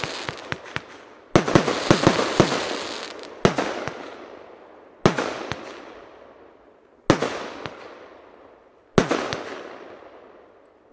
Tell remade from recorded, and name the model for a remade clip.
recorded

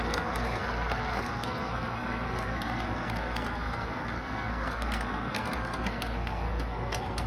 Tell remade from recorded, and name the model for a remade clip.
remade, codec, SNAC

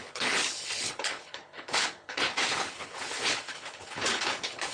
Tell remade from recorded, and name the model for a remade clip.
remade, codec, HILCodec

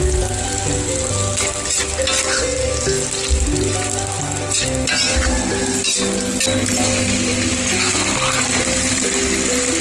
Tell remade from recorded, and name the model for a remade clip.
recorded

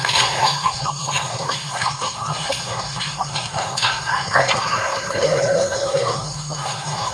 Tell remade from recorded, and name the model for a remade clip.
remade, codec, SNAC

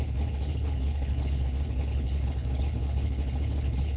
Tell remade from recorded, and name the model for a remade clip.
remade, codec, HILCodec